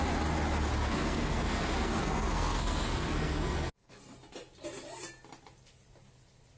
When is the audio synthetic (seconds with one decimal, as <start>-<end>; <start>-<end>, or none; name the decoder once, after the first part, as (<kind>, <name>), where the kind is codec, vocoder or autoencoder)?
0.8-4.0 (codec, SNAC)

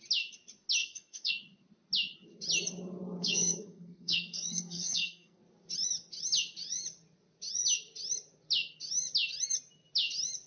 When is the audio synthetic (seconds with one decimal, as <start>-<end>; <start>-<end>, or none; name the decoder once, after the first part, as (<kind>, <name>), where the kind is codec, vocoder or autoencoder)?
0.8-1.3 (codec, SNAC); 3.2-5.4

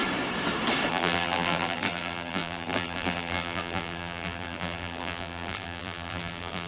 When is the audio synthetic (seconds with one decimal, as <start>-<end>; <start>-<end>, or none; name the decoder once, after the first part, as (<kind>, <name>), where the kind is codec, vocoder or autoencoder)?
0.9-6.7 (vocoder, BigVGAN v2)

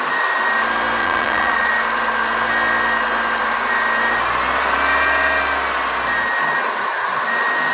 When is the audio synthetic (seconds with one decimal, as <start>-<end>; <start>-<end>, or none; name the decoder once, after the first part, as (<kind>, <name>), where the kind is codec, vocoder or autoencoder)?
1.0-1.7 (vocoder, Vocos)